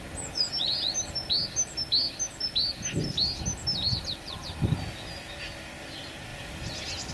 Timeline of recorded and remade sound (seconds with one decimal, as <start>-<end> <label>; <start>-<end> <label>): 0.0-7.1 recorded